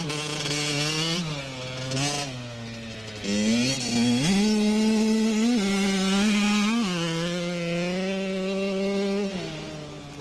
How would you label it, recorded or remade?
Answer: recorded